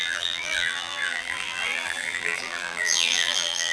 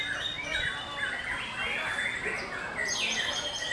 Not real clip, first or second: first